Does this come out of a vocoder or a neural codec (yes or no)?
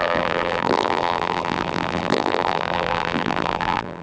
yes